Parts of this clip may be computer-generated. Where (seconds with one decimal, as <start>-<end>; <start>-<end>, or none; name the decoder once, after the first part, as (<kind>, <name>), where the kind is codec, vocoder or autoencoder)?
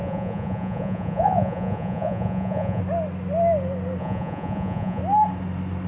0.0-2.8 (vocoder, Vocos); 4.0-5.0